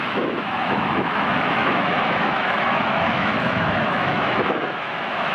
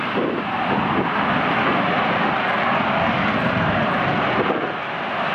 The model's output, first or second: first